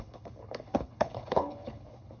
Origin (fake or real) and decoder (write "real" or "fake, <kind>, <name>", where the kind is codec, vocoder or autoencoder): fake, codec, HILCodec